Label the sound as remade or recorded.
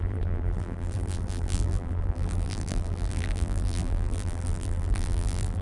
remade